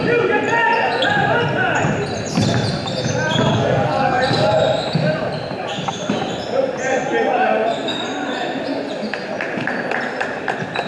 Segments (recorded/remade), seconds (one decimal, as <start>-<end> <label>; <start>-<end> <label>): 0.0-3.5 recorded; 3.5-4.2 remade; 4.2-10.9 recorded